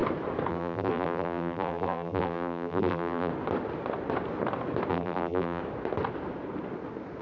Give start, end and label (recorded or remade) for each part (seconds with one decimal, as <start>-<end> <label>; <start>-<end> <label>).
0.0-0.5 recorded; 0.5-3.3 remade; 3.3-4.9 recorded; 4.9-5.6 remade; 5.6-7.2 recorded